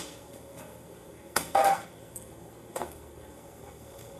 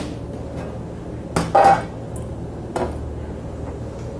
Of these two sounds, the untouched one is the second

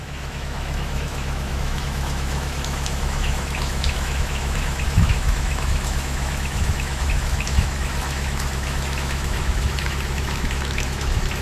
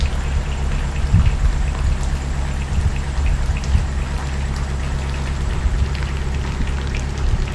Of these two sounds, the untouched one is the second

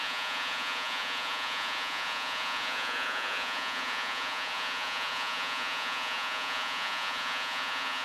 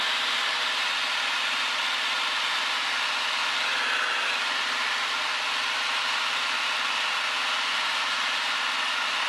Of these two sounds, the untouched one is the second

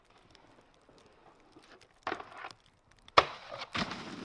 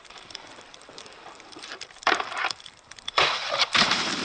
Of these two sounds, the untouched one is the first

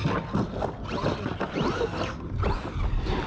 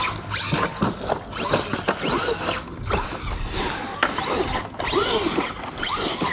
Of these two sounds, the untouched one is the second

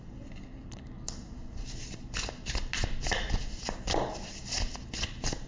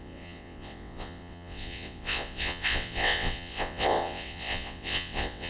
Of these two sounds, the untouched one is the first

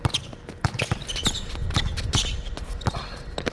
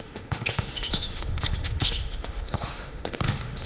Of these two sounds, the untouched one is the first